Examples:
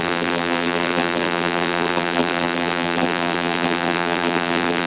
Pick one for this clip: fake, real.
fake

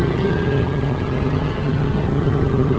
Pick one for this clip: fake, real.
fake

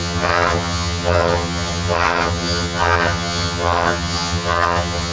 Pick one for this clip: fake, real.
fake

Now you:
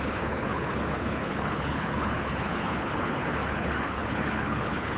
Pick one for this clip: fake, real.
fake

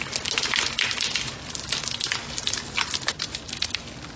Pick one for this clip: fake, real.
real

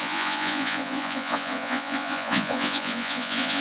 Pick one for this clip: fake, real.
fake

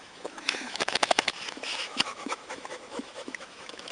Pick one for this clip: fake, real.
fake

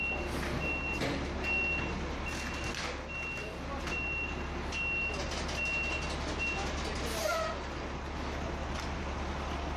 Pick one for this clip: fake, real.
real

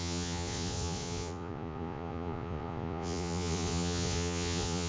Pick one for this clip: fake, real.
fake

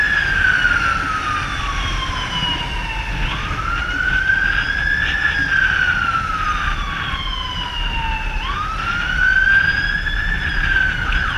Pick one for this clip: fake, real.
real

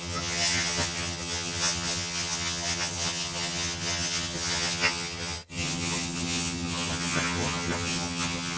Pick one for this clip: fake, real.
fake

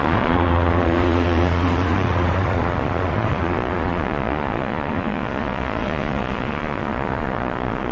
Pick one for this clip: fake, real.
fake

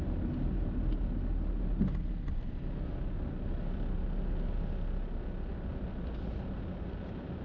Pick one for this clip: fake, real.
real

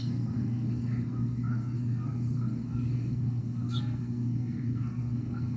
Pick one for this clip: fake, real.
fake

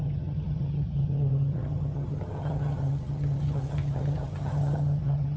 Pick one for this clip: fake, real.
fake